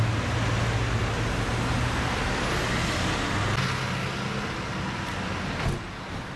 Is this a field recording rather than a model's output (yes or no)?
yes